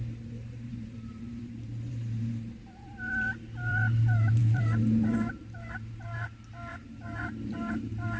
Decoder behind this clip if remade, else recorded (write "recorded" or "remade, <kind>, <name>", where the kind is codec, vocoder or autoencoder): remade, vocoder, BigVGAN v2